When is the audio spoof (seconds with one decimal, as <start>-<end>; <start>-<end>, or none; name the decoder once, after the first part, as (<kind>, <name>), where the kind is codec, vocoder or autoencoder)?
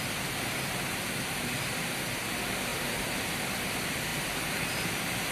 none